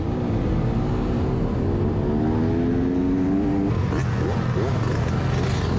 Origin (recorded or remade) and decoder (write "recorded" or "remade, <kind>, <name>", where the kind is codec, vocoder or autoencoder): recorded